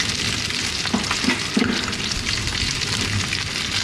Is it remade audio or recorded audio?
recorded